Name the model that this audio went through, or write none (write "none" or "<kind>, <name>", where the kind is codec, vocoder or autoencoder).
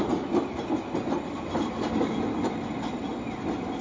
none